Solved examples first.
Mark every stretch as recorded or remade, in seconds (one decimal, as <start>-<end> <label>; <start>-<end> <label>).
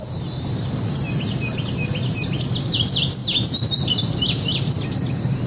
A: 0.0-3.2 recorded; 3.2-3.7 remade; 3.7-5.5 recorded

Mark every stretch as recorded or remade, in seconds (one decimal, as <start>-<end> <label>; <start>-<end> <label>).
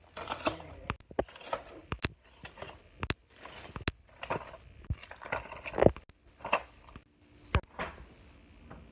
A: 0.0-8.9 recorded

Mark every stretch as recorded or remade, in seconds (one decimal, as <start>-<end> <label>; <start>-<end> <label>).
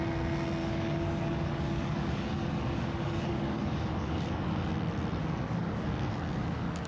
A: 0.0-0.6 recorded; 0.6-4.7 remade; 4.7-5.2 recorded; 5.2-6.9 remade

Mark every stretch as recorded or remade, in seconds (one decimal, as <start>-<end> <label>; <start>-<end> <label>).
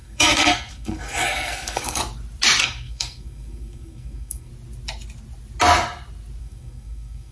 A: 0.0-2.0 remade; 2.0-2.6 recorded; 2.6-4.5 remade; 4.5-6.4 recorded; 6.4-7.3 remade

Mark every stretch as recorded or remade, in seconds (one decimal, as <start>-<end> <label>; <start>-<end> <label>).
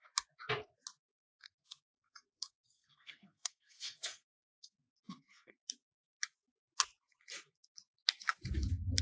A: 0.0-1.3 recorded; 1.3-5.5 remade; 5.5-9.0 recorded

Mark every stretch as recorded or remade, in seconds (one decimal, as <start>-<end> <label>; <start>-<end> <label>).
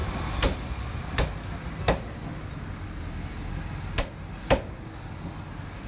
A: 0.0-5.9 recorded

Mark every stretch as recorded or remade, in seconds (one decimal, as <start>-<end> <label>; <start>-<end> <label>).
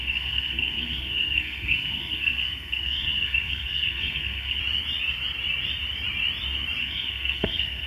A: 0.0-4.6 remade; 4.6-6.8 recorded; 6.8-7.9 remade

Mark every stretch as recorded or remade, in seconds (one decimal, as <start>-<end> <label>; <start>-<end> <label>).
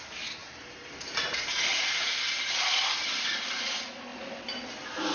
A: 0.0-0.4 recorded; 0.4-2.2 remade; 2.2-5.1 recorded